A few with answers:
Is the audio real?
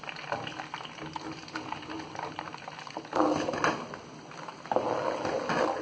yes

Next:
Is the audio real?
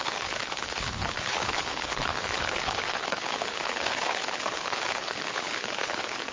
no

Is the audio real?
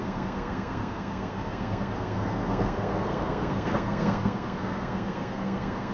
no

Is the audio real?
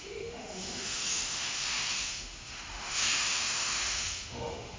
no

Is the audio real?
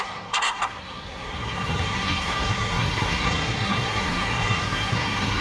no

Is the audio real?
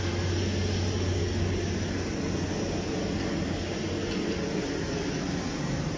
yes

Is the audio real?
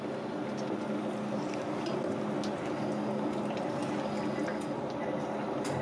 yes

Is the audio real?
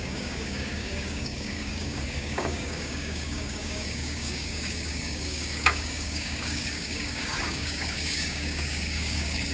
no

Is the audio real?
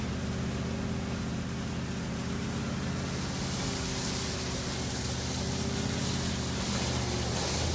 yes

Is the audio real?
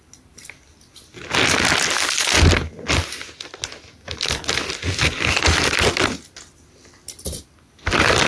yes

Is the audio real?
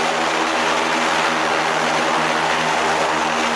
yes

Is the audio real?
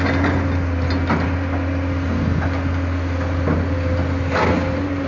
yes